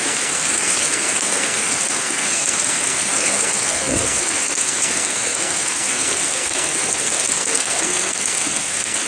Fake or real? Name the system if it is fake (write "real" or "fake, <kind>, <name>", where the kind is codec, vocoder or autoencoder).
fake, codec, SNAC